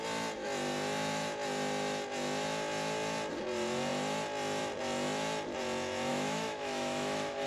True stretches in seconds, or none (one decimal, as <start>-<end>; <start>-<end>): 0.0-6.1

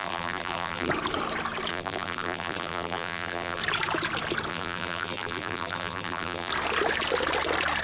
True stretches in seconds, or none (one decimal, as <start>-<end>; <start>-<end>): 0.9-1.7; 3.6-4.5; 6.5-7.8

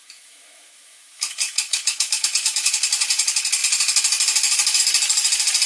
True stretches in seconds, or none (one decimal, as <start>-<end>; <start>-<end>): 2.7-5.7

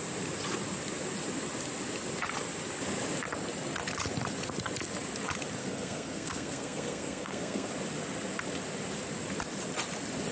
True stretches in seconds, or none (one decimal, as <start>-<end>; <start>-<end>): 0.0-5.6; 7.7-10.3

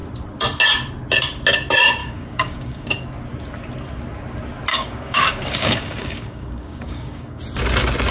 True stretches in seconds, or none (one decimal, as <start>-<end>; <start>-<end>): 0.0-2.0; 3.0-4.7; 7.4-8.1

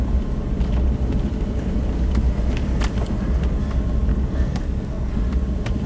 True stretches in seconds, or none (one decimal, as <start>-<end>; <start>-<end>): 0.0-4.1; 5.1-5.9